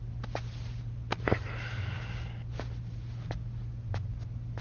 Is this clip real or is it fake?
real